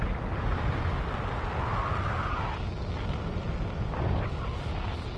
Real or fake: real